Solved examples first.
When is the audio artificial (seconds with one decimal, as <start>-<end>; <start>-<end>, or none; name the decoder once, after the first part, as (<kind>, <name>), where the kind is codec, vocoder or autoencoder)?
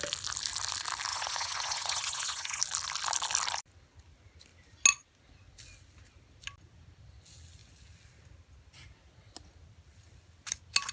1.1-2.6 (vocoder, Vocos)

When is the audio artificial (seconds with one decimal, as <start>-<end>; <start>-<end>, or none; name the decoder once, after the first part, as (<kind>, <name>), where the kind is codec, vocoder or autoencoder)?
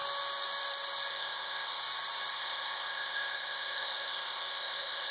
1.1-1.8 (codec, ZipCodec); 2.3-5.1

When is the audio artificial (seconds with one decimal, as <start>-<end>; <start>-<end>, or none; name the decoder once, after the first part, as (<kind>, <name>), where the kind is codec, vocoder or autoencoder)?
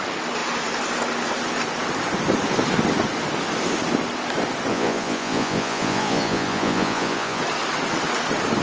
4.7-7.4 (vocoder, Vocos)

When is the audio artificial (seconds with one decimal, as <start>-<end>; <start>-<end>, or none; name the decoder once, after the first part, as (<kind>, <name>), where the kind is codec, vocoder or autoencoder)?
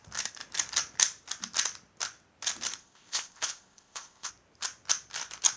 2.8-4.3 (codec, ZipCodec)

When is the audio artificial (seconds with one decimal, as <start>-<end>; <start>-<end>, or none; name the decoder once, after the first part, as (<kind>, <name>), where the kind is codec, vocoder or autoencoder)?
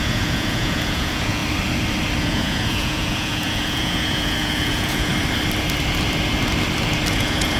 0.0-1.4 (vocoder, Vocos); 2.2-5.1; 7.1-7.6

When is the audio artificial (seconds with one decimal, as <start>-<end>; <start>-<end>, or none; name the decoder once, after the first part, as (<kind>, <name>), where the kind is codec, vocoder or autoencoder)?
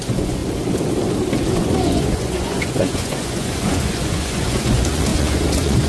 0.0-0.4 (vocoder, Vocos); 1.4-5.9